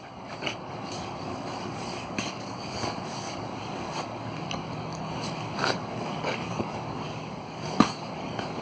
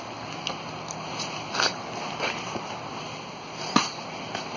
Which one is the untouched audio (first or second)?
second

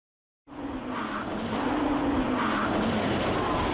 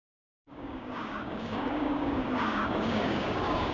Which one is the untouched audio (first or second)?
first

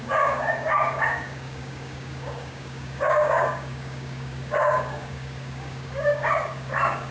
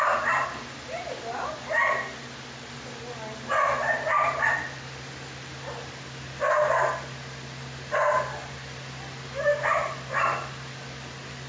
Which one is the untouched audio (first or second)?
second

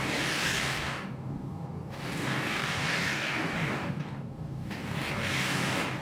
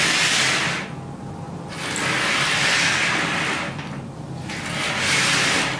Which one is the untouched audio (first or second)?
second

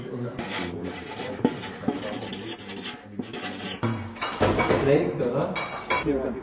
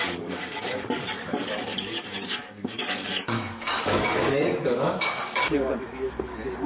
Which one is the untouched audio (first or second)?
first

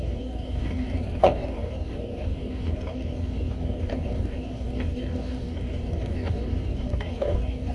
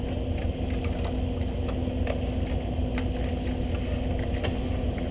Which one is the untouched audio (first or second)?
second